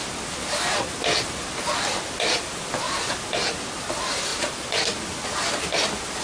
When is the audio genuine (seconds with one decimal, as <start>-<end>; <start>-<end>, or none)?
0.0-6.2